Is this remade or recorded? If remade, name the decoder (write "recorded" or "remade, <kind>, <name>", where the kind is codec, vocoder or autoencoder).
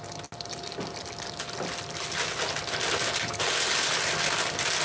recorded